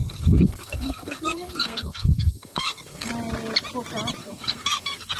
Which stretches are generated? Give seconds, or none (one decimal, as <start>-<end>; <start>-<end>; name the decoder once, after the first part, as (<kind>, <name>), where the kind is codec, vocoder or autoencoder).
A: 0.0-3.1 (codec, SNAC); 4.2-5.2